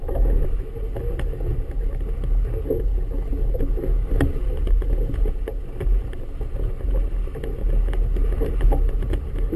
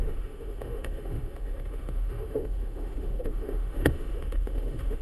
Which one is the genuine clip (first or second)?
first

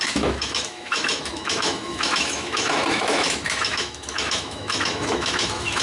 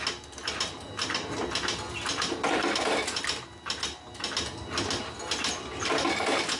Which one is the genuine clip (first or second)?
second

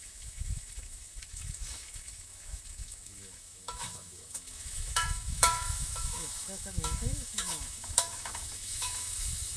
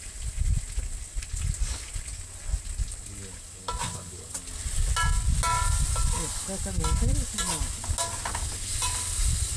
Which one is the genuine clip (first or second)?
second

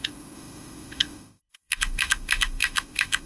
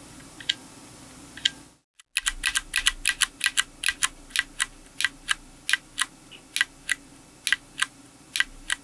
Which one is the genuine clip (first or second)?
second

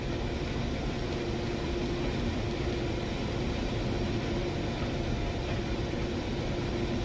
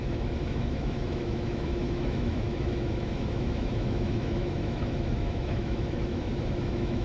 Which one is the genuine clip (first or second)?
first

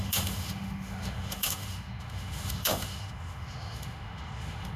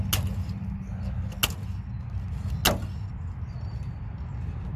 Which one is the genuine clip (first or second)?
second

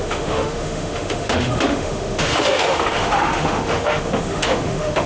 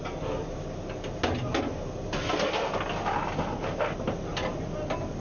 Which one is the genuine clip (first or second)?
second